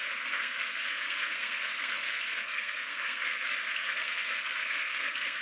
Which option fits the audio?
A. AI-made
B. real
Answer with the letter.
A